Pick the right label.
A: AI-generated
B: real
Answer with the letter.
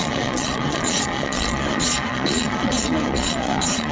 A